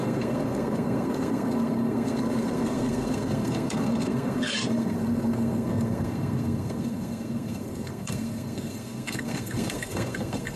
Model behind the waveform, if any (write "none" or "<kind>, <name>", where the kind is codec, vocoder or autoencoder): codec, SNAC